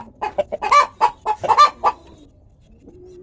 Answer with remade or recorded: recorded